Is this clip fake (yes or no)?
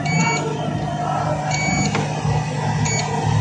no